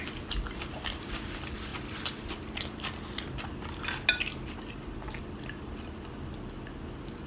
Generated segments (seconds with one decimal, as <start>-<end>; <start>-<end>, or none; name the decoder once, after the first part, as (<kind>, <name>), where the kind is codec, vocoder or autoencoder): none